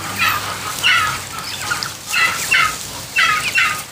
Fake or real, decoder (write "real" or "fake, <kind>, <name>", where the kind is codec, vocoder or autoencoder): real